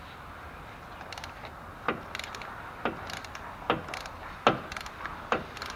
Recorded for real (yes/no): yes